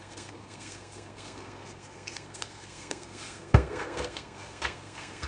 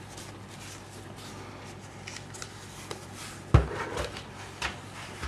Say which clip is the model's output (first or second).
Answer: first